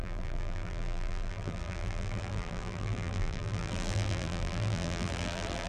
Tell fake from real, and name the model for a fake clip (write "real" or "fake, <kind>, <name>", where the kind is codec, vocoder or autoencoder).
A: fake, vocoder, BigVGAN v2